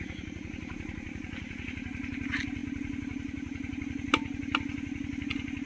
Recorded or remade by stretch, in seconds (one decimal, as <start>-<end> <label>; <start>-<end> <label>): 0.0-5.7 recorded